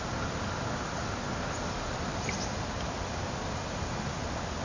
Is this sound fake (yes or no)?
no